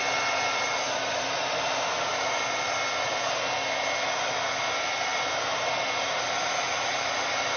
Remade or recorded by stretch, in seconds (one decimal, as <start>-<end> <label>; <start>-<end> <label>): 0.0-7.6 recorded